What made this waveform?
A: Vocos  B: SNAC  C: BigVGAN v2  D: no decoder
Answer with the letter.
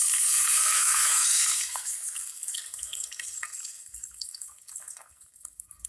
B